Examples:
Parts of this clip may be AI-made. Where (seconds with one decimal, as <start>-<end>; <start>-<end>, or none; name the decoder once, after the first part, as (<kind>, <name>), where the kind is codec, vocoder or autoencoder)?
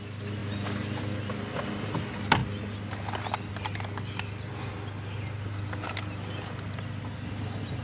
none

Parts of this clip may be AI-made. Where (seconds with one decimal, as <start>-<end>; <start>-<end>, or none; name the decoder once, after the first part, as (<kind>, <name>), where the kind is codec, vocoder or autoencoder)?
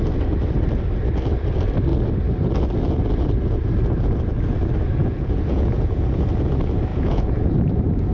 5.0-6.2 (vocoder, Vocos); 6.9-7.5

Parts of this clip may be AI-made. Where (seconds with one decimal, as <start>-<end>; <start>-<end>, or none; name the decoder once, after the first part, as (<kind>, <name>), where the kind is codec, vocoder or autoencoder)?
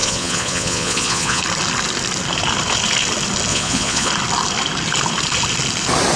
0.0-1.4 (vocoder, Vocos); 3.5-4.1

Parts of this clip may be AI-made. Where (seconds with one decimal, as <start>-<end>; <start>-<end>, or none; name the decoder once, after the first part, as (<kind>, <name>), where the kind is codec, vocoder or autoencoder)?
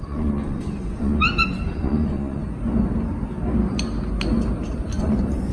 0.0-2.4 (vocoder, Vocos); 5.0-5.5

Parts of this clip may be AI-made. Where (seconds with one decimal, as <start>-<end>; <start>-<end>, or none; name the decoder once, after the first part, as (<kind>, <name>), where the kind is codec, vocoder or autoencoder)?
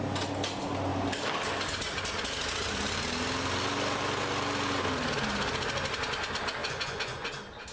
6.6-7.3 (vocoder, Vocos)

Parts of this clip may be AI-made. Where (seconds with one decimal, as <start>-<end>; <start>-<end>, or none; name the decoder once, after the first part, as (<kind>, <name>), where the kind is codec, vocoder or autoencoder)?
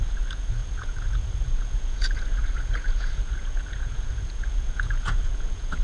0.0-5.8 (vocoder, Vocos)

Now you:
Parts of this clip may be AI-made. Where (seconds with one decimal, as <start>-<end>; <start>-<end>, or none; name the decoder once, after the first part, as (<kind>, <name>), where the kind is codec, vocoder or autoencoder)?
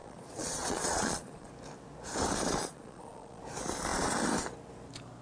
0.0-1.5 (vocoder, Vocos); 2.6-3.4